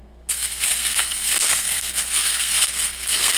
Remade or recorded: remade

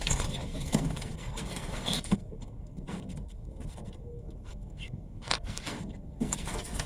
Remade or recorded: remade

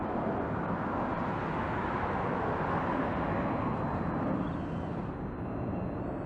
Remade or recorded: recorded